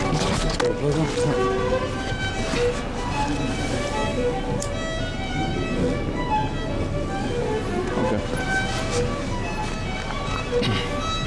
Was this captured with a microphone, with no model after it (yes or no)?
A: yes